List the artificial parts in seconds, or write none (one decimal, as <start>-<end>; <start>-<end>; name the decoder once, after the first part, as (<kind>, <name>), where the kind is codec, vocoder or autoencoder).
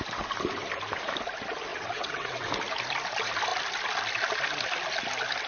1.7-2.5 (vocoder, WaveNeXt)